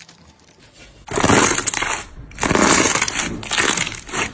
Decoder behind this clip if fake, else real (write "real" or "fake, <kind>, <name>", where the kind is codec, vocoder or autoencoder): real